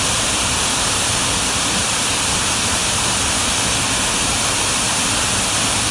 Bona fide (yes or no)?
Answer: yes